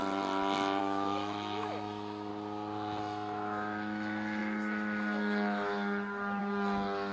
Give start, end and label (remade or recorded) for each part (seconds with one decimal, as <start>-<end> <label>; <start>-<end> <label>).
0.0-0.8 recorded; 0.8-2.3 remade; 2.3-3.0 recorded; 3.0-7.1 remade